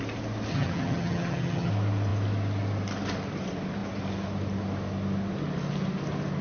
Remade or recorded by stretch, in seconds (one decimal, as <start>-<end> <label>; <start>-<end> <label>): 0.0-0.5 recorded; 0.5-1.7 remade; 1.7-6.4 recorded